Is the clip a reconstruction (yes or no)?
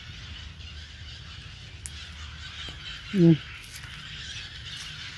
no